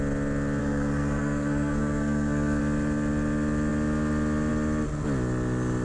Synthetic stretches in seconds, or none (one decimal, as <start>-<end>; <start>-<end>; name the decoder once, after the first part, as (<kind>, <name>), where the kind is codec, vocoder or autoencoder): 0.6-2.6 (codec, SNAC)